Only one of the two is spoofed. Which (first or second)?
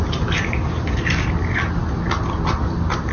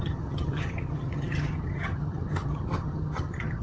second